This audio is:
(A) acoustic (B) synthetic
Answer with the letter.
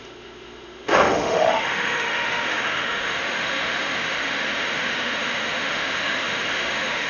B